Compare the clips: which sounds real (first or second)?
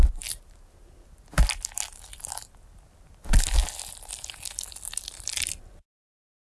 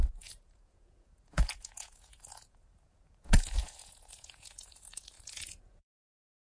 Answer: first